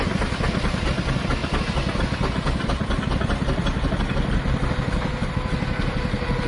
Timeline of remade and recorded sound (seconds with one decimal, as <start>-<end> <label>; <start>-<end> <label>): 0.0-6.5 recorded